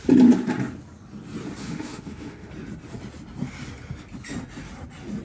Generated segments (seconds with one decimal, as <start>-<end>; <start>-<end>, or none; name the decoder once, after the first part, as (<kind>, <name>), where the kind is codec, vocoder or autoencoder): 1.6-2.5 (autoencoder, DAC-VAE)